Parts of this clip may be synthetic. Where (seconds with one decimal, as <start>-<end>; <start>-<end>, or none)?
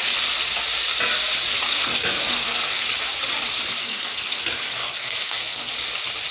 1.7-2.8; 3.8-5.7